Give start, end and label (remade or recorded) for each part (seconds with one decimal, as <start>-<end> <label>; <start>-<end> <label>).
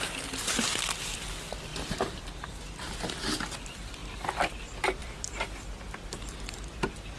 0.0-1.7 recorded; 1.7-3.3 remade; 3.3-4.0 recorded; 4.0-4.6 remade; 4.6-5.0 recorded; 5.0-6.7 remade; 6.7-7.2 recorded